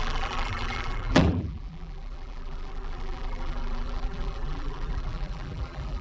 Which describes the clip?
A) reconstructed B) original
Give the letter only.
A